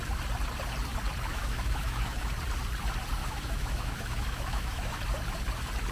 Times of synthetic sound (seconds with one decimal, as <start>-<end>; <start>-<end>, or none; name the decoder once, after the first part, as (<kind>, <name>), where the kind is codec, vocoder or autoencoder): 1.3-2.3 (autoencoder, DAC-VAE); 3.2-5.0